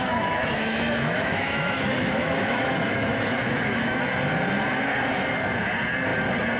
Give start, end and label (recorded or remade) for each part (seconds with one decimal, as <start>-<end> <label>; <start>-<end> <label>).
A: 0.0-4.0 remade; 4.0-6.6 recorded